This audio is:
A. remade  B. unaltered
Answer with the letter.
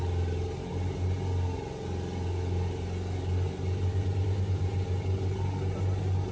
B